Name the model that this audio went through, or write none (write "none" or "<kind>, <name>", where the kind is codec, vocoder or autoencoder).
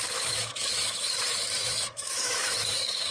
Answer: autoencoder, DAC-VAE